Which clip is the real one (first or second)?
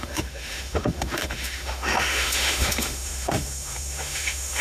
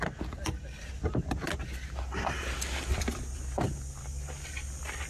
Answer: second